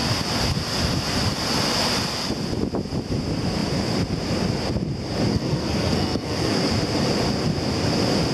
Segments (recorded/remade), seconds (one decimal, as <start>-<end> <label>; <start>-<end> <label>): 0.0-5.3 recorded; 5.3-6.7 remade; 6.7-8.3 recorded